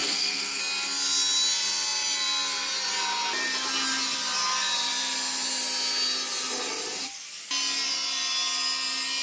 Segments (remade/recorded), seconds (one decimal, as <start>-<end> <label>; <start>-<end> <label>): 0.0-0.6 remade; 0.6-9.2 recorded

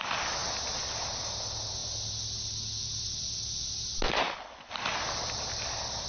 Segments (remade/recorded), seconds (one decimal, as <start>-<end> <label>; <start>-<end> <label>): 0.0-6.1 recorded